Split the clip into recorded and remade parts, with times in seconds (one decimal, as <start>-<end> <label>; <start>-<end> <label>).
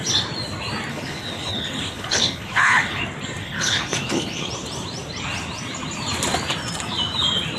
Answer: 0.0-0.9 recorded; 0.9-3.0 remade; 3.0-3.4 recorded; 3.4-4.5 remade; 4.5-7.6 recorded